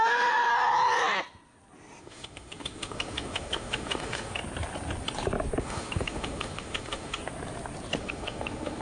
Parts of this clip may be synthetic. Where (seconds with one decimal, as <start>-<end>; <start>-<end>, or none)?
0.0-0.5; 2.0-4.4; 5.6-7.2; 8.0-8.8